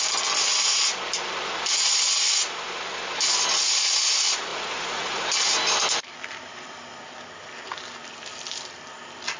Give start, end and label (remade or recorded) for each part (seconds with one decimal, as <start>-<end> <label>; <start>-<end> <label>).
0.0-4.5 recorded; 4.5-5.2 remade; 5.2-9.4 recorded

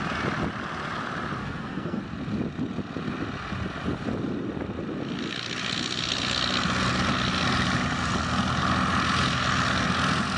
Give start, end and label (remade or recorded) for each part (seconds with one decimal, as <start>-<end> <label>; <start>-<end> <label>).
0.0-1.4 recorded; 1.4-2.0 remade; 2.0-10.4 recorded

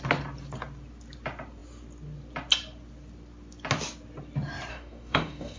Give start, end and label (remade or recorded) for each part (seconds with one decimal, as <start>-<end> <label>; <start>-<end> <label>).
0.0-4.7 recorded; 4.7-5.6 remade

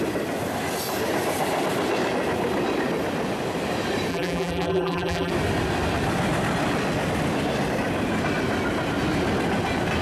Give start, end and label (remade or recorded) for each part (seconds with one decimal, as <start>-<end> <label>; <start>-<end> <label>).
0.0-4.1 recorded; 4.1-5.3 remade; 5.3-10.0 recorded

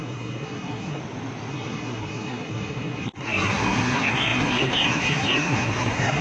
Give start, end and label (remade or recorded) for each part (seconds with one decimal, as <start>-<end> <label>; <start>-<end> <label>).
0.0-1.0 remade; 1.0-1.5 recorded; 1.5-6.2 remade

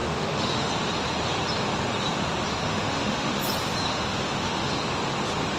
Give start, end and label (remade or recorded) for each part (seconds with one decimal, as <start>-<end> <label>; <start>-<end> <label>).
0.0-0.7 remade; 0.7-2.6 recorded; 2.6-3.3 remade; 3.3-3.9 recorded; 3.9-4.7 remade; 4.7-5.6 recorded

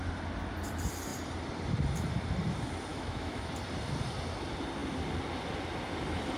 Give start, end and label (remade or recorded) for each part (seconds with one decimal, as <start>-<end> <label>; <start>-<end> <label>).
0.0-2.9 recorded; 2.9-3.5 remade; 3.5-6.4 recorded